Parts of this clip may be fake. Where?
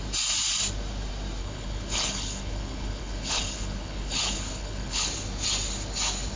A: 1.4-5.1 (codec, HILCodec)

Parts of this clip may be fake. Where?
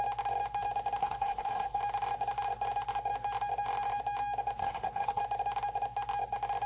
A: 1.0-1.8 (codec, HILCodec); 4.6-5.2